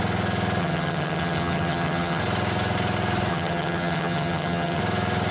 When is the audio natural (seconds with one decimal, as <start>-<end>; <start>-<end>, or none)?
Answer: 0.0-0.6; 2.2-3.3; 4.8-5.3